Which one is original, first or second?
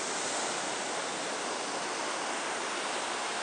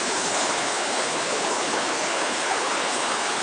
first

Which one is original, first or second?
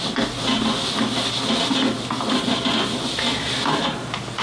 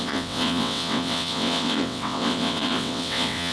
first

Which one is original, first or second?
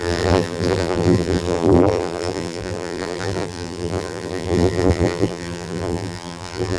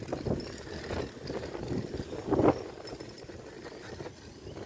second